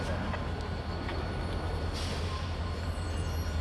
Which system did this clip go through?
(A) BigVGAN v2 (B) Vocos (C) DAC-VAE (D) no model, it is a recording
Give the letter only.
D